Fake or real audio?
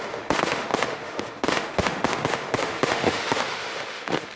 fake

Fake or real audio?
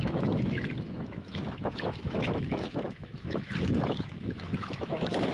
fake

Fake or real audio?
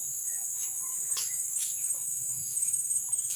fake